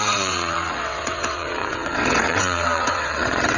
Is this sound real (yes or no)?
no